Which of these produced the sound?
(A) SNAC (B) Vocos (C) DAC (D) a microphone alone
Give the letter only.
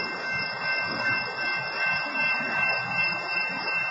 D